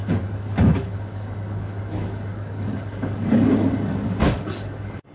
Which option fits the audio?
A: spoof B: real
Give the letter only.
A